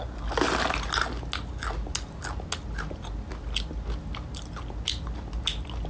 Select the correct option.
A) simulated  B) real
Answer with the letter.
B